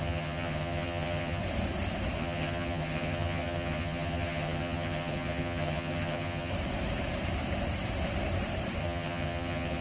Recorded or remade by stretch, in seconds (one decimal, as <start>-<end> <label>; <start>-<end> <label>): 0.0-1.4 remade; 1.4-2.2 recorded; 2.2-6.5 remade; 6.5-8.8 recorded; 8.8-9.8 remade